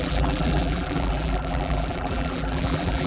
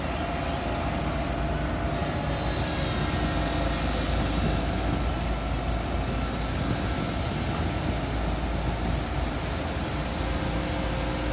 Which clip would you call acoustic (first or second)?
second